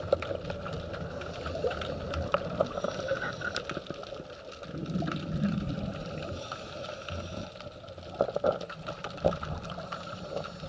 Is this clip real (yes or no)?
yes